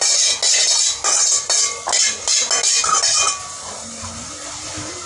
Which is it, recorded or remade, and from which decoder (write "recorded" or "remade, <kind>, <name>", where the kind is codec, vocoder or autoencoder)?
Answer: recorded